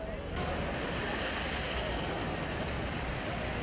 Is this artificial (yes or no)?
no